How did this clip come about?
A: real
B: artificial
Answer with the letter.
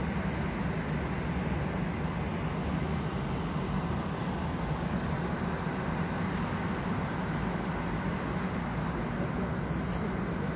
A